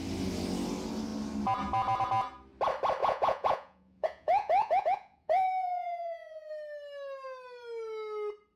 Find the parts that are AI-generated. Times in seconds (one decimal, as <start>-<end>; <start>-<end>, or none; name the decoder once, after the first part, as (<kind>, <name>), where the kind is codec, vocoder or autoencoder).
3.0-6.5 (vocoder, Vocos)